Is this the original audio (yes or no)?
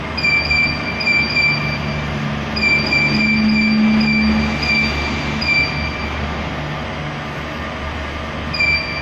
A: yes